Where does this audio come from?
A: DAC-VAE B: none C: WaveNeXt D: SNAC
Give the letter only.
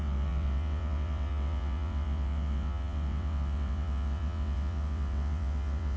C